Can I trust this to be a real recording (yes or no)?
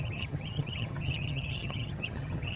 no